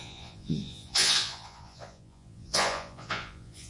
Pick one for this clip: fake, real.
fake